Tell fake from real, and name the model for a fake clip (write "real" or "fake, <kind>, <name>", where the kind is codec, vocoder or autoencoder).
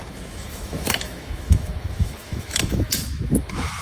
fake, autoencoder, DAC-VAE